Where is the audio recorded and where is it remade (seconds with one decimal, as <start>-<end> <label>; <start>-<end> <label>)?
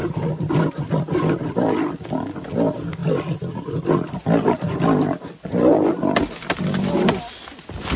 0.0-1.4 remade; 1.4-8.0 recorded